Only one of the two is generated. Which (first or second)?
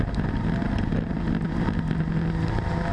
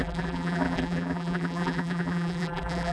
second